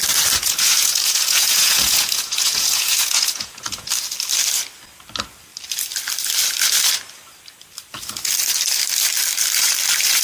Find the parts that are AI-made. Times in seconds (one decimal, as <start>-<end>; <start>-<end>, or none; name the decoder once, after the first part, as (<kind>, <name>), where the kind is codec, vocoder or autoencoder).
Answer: 0.4-3.9 (vocoder, Vocos)